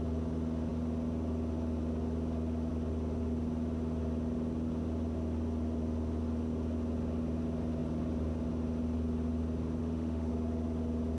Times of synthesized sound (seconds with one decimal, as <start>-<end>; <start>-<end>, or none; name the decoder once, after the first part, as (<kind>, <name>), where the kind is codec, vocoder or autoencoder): 9.8-10.3 (autoencoder, DAC-VAE)